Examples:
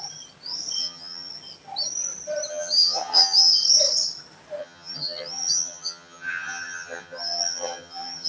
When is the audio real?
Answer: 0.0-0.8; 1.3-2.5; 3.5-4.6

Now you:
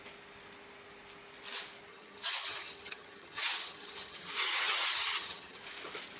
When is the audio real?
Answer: 0.0-1.9; 5.6-6.2

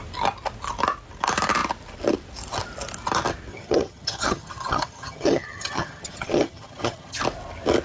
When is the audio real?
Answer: 0.0-3.5; 7.2-7.8

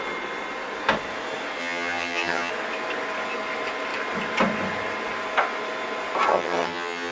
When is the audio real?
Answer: 0.0-1.6; 2.5-6.3

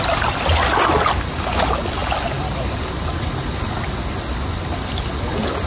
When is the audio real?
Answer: 0.0-5.7